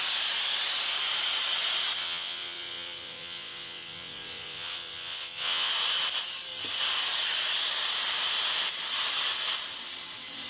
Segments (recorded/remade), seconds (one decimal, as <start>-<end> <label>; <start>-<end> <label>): 0.0-2.0 recorded; 2.0-5.7 remade; 5.7-10.5 recorded